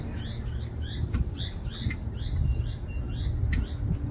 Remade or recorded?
recorded